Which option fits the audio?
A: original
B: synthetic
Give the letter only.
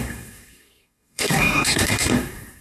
B